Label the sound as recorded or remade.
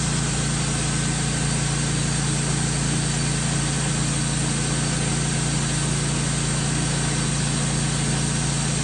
recorded